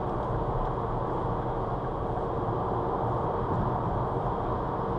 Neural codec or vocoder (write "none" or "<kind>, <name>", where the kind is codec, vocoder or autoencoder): none